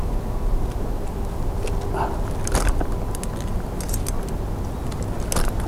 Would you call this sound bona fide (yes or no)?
yes